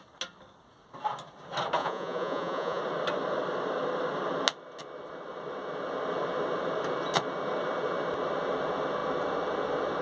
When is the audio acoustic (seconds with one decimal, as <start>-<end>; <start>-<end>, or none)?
0.0-1.8; 2.8-10.0